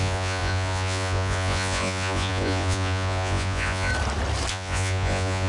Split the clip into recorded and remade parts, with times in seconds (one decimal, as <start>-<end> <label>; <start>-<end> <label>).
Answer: 0.0-3.9 remade; 3.9-4.5 recorded; 4.5-5.5 remade